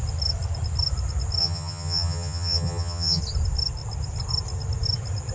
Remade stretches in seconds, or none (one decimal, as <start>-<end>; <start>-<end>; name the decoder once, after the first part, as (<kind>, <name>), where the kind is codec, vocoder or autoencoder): 1.4-3.2 (vocoder, HiFi-GAN)

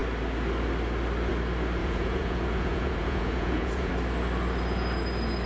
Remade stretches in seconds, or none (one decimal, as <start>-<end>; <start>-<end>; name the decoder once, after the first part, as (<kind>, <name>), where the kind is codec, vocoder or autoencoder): 1.8-3.9 (vocoder, Vocos)

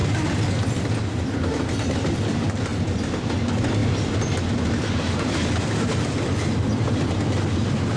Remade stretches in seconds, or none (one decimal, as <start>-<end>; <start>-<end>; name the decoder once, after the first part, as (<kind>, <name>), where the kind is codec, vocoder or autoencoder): none

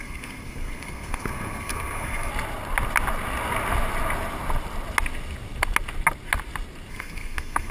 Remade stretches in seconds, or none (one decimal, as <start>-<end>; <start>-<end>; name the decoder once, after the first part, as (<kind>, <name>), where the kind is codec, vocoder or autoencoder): 0.0-2.3 (codec, SNAC); 6.9-7.7

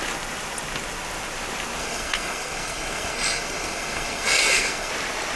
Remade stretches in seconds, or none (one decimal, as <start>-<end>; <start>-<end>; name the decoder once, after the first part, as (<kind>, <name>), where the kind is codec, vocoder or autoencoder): 1.8-4.9 (codec, SNAC)

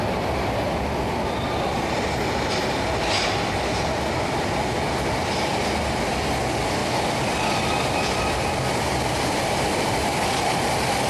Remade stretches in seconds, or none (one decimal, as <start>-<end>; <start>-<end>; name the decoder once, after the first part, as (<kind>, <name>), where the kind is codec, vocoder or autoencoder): 6.8-9.9 (vocoder, BigVGAN v2)

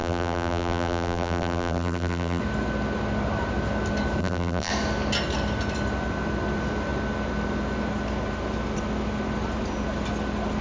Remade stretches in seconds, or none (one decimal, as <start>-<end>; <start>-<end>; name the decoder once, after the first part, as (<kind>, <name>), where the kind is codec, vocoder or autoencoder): 0.0-2.4 (vocoder, BigVGAN v2); 4.2-4.7

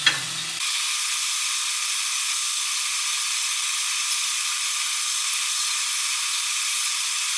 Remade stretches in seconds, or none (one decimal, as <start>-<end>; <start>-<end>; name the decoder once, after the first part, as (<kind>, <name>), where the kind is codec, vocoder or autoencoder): none